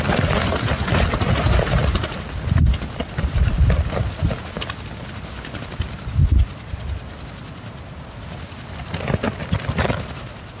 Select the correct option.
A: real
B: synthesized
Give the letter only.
A